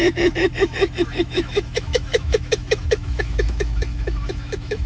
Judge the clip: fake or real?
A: fake